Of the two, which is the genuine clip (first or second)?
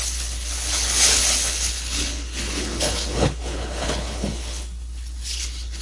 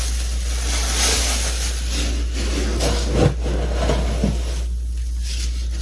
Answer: second